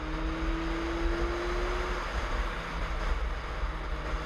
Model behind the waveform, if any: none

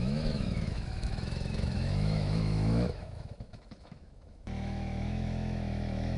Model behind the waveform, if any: autoencoder, DAC-VAE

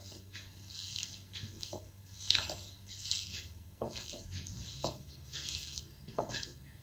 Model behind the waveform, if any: codec, SNAC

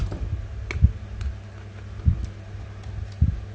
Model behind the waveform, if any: none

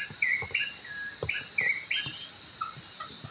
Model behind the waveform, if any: none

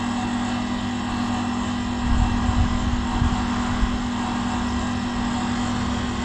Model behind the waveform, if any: none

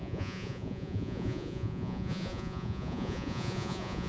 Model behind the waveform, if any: vocoder, Vocos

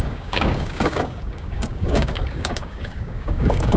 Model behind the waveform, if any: codec, DAC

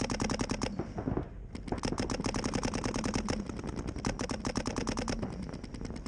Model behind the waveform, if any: none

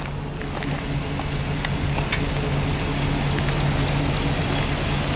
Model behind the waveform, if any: none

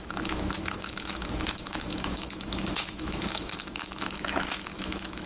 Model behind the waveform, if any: autoencoder, DAC-VAE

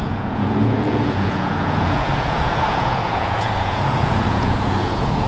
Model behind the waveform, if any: vocoder, Vocos